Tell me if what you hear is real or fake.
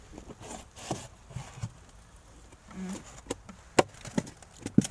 real